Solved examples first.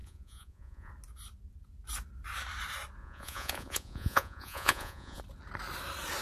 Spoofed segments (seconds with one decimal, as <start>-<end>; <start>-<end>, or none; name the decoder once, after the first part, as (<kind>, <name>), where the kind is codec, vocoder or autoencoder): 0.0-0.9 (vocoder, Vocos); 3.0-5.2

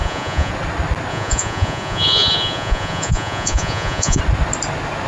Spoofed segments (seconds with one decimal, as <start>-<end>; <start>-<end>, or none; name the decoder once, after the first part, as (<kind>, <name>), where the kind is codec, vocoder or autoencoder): 0.0-0.5 (vocoder, Vocos); 1.1-4.2

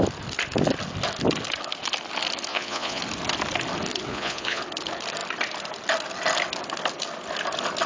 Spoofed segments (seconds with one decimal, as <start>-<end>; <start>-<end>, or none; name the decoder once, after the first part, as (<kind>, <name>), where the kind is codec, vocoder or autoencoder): 2.5-3.0 (vocoder, Vocos); 4.1-4.6

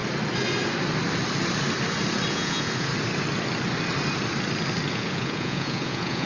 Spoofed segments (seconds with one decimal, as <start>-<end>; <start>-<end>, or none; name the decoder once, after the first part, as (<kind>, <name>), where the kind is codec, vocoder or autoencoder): 2.3-2.9 (vocoder, Vocos); 4.9-6.3

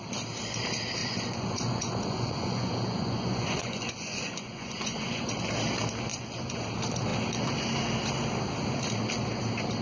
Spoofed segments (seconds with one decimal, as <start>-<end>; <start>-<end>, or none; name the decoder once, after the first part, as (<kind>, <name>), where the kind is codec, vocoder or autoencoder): 1.0-5.3 (vocoder, Vocos); 6.1-6.6